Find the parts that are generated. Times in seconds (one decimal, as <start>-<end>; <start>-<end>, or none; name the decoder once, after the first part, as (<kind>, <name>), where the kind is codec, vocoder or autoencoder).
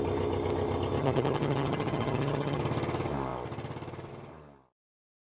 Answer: 1.0-2.6 (vocoder, HiFi-GAN)